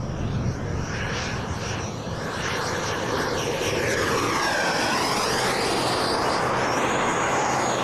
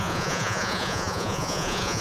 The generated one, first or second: second